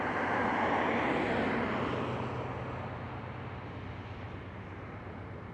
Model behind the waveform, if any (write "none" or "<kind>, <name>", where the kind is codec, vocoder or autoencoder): none